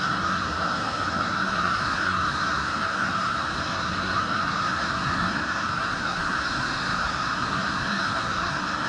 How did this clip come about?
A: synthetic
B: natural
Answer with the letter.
A